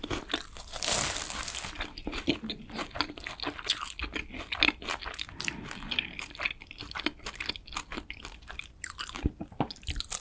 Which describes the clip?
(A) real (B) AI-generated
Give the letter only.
A